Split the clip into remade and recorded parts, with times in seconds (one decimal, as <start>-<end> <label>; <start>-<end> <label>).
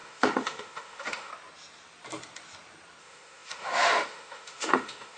0.0-1.3 remade; 1.3-3.0 recorded; 3.0-5.2 remade